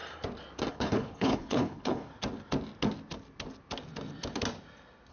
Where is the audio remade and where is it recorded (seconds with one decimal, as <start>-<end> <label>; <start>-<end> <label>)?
0.0-0.7 recorded; 0.7-2.1 remade; 2.1-5.1 recorded